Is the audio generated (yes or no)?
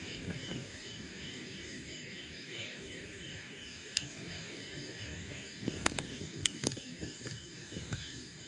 yes